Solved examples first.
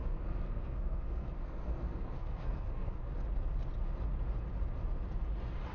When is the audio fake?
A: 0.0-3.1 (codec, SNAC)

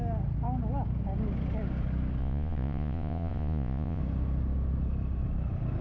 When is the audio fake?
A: 2.2-4.0 (vocoder, Vocos)

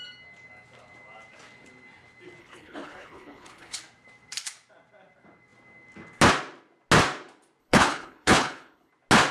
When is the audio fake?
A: 2.4-3.8 (codec, HILCodec); 7.6-8.9